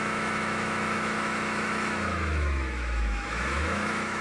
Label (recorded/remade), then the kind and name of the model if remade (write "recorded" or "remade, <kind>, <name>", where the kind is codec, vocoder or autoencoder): remade, autoencoder, DAC-VAE